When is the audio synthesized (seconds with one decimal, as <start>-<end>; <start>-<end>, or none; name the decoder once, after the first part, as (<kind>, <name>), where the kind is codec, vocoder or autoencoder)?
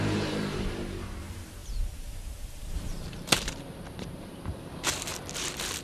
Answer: 0.0-5.1 (vocoder, BigVGAN v2)